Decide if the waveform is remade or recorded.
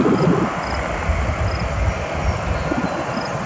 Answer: recorded